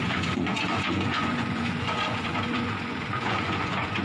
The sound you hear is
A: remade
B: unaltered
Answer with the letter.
A